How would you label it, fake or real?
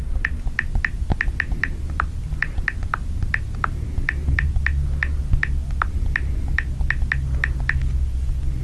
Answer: real